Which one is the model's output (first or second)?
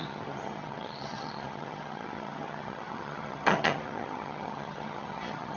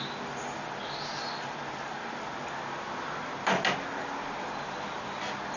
first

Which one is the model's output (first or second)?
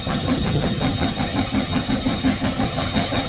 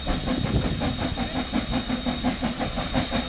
first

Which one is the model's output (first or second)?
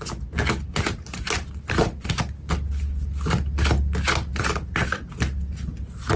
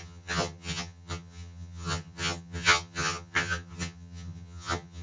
second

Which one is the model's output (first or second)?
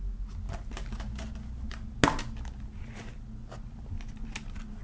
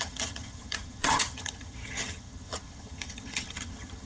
second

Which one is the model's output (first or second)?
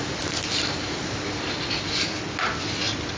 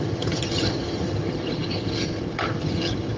second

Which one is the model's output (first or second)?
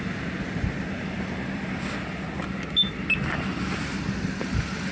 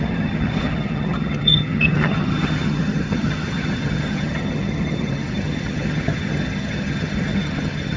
second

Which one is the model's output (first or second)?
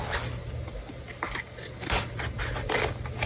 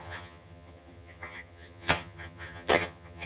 second